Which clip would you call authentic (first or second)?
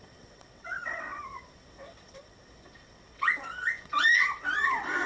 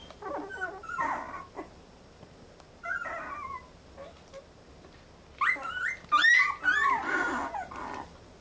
second